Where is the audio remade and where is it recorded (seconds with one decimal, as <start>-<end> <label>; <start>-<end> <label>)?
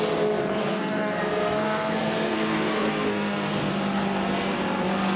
0.0-0.6 recorded; 0.6-3.7 remade; 3.7-5.2 recorded